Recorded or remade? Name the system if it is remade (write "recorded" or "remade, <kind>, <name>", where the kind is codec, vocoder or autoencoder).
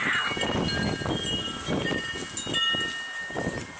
recorded